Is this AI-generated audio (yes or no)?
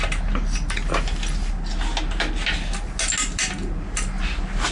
no